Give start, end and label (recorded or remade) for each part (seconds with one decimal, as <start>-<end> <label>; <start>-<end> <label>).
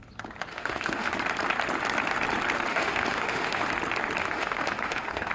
0.0-0.5 recorded; 0.5-1.1 remade; 1.1-2.7 recorded; 2.7-3.7 remade; 3.7-4.2 recorded; 4.2-5.3 remade